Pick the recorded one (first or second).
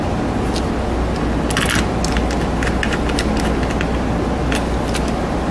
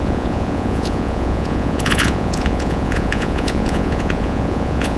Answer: first